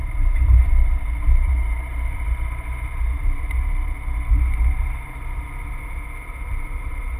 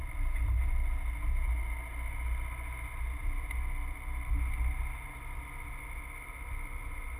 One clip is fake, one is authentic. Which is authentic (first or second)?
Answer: second